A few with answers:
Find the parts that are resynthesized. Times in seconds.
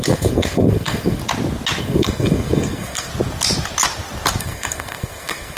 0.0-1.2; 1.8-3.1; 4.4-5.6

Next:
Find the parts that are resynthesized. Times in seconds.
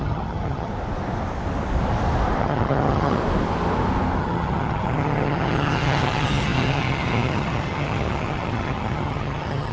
0.0-0.7; 2.4-3.2; 4.2-9.7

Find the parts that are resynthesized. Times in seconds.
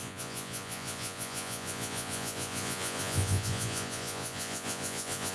0.0-5.3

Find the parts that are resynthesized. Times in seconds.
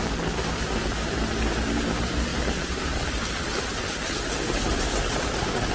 2.3-5.2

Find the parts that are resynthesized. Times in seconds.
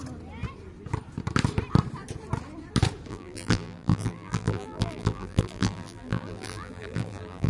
3.1-7.5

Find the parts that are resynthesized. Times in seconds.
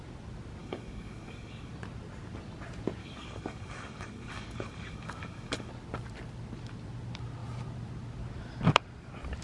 0.6-1.7; 3.0-5.7